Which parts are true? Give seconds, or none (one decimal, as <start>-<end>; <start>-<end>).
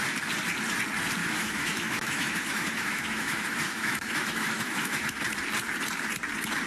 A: 0.0-1.2; 5.2-6.7